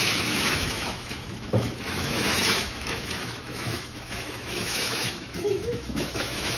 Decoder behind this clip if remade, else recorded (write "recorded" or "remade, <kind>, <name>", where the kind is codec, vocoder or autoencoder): remade, autoencoder, DAC-VAE